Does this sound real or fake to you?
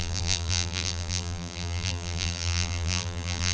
fake